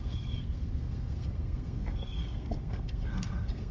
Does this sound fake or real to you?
fake